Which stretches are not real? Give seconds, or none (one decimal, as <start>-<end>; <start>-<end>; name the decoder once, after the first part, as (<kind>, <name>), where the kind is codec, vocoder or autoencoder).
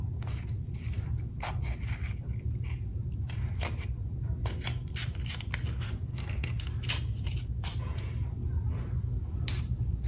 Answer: 6.1-6.6 (codec, SNAC)